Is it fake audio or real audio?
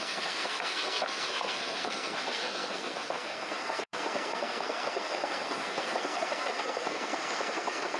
fake